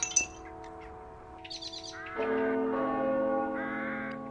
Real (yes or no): yes